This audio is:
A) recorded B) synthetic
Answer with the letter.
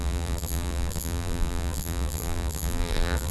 B